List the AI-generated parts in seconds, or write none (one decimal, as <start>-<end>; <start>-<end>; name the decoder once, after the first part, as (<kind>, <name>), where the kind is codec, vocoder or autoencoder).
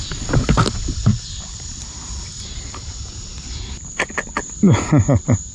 1.1-4.4 (vocoder, BigVGAN v2)